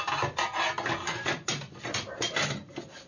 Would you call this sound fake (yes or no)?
no